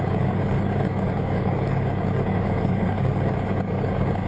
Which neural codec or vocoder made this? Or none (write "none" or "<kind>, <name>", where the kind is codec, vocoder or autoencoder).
codec, DAC